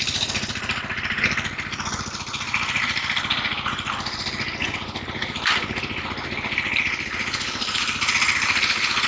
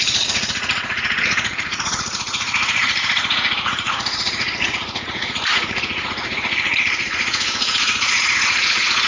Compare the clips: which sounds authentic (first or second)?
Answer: first